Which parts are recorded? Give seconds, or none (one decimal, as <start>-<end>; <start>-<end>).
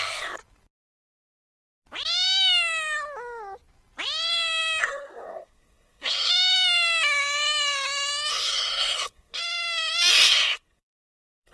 0.4-4.8; 6.3-8.3; 9.4-10.1